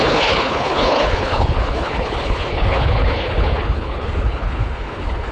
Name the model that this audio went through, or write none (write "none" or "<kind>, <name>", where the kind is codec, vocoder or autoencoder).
codec, HILCodec